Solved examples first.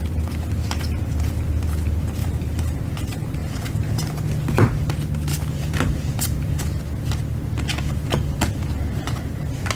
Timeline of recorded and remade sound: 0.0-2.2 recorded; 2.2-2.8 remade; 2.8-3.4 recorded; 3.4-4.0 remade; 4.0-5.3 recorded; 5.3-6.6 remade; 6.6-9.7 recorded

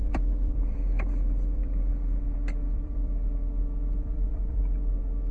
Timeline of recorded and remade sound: 0.0-1.9 remade; 1.9-2.6 recorded; 2.6-4.6 remade; 4.6-5.3 recorded

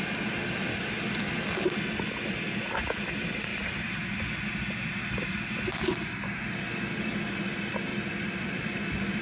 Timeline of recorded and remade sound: 0.0-3.5 recorded; 3.5-4.1 remade; 4.1-7.9 recorded; 7.9-8.7 remade; 8.7-9.2 recorded

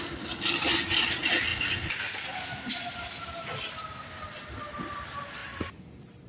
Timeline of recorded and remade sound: 0.0-6.3 recorded